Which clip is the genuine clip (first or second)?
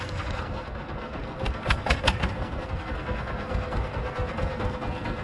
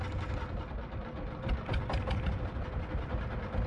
second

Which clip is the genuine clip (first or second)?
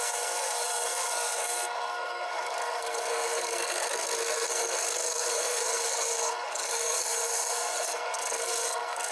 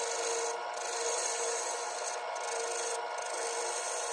second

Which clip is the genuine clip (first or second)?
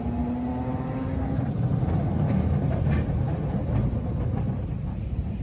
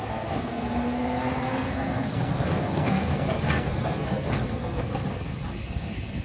first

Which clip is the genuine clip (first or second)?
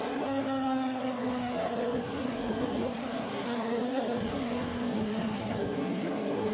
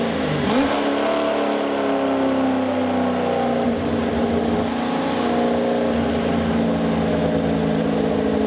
second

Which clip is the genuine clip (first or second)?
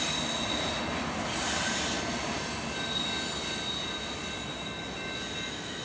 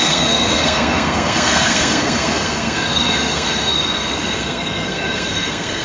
first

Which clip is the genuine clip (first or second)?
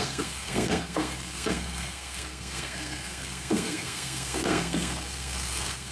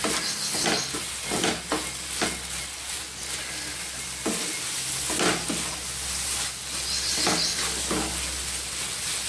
second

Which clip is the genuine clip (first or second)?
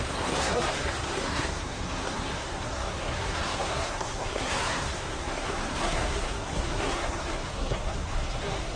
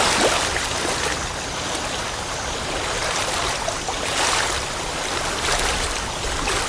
second